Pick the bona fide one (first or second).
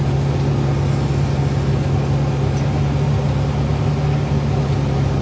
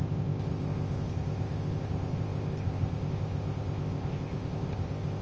first